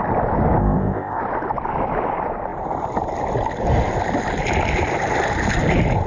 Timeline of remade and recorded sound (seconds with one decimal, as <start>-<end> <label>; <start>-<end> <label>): 0.0-0.6 recorded; 0.6-1.2 remade; 1.2-6.1 recorded